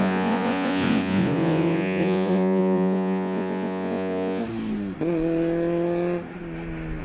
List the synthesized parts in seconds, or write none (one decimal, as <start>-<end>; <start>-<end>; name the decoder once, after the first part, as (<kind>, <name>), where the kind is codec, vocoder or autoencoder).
0.0-4.4 (vocoder, Vocos)